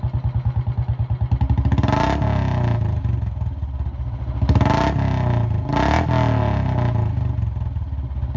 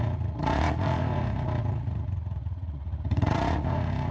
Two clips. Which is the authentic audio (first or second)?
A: first